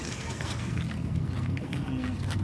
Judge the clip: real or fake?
fake